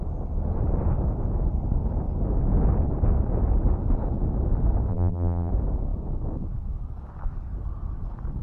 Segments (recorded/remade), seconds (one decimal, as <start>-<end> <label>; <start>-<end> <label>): 0.0-4.9 recorded; 4.9-5.5 remade; 5.5-8.4 recorded